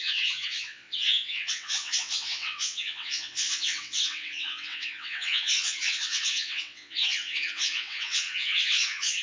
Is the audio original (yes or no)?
no